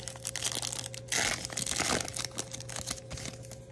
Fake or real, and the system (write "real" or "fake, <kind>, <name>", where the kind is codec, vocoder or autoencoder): real